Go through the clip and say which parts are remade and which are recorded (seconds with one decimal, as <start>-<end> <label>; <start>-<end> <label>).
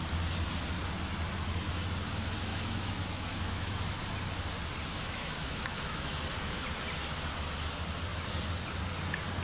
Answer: 0.0-2.5 recorded; 2.5-4.0 remade; 4.0-4.9 recorded; 4.9-6.2 remade; 6.2-9.4 recorded